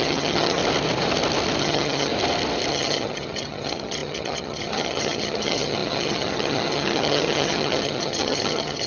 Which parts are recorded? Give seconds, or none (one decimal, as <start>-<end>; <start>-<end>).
0.6-1.6; 2.1-2.7